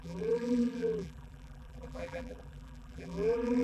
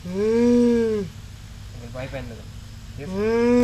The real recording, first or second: second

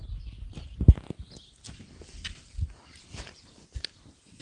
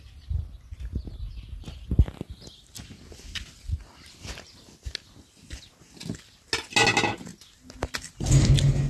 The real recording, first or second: second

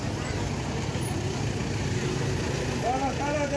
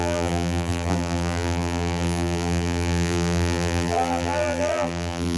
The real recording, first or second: first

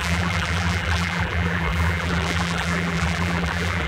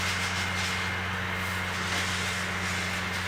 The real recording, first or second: second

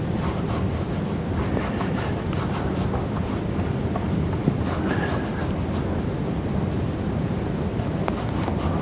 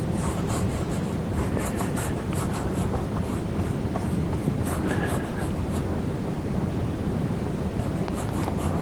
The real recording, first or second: first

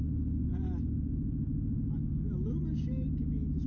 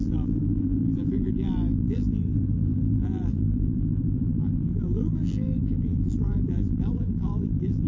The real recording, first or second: first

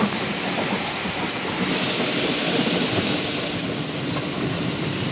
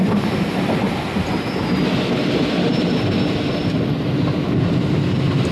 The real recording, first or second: second